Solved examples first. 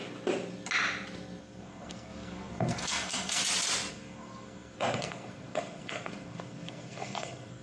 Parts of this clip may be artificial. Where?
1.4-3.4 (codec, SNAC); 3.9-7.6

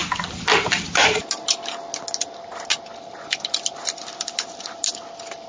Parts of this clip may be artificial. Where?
none